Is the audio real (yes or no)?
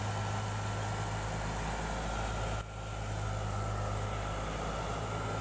yes